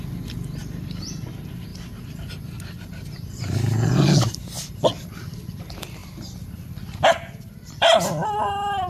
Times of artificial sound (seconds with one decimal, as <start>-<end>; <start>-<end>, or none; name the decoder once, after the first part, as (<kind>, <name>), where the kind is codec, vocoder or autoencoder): 0.6-1.2 (vocoder, BigVGAN v2)